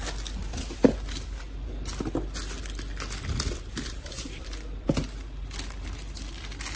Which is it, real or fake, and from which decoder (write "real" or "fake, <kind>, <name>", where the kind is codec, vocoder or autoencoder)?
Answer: real